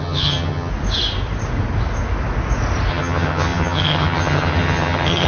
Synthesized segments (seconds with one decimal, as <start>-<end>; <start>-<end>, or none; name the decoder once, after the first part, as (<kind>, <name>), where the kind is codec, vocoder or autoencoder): 0.0-0.7 (vocoder, HiFi-GAN); 2.9-5.3